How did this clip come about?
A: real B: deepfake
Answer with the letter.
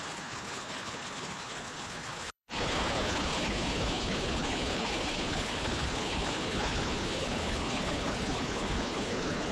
B